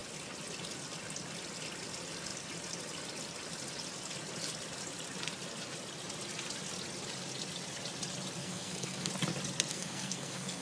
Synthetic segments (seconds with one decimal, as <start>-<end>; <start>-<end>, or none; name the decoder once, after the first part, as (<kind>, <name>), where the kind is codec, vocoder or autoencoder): 8.4-9.1 (codec, SNAC); 9.7-10.6